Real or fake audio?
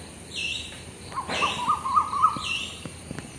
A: fake